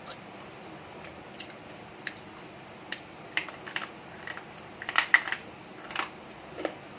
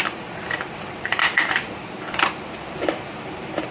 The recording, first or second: first